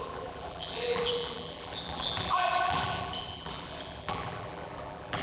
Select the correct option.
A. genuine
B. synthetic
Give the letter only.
B